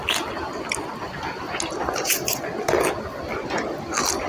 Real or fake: real